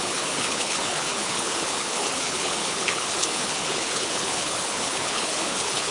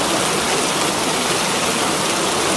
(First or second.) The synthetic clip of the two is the first